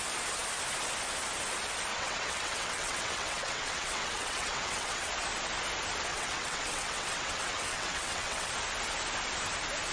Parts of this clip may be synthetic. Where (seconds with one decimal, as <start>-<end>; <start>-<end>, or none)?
1.9-5.1; 6.1-8.5